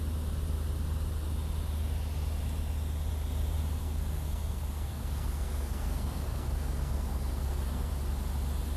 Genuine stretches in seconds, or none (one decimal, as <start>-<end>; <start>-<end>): 0.0-3.8; 7.9-8.8